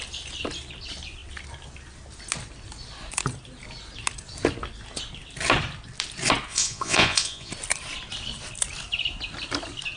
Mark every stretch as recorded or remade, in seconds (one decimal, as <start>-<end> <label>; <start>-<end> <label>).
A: 0.0-6.5 recorded; 6.5-7.5 remade; 7.5-10.0 recorded